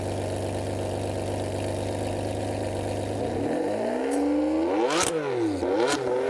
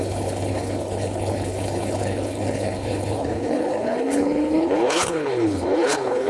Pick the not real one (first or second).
second